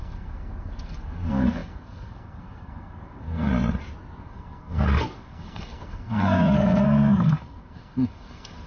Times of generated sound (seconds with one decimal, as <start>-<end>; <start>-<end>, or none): 0.0-3.5; 4.2-8.7